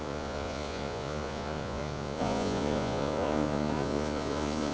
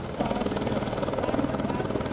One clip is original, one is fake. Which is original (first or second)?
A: second